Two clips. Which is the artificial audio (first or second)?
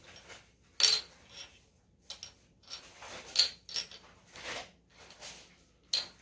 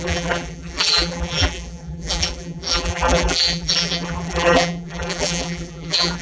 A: second